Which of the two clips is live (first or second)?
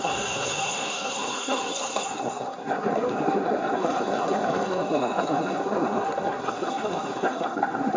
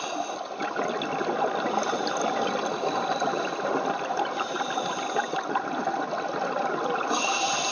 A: second